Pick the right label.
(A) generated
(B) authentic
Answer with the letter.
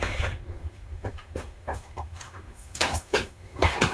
A